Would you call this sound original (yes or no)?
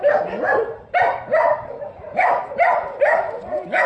yes